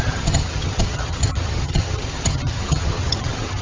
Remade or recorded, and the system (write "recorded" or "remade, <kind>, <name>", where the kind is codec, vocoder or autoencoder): remade, vocoder, HiFi-GAN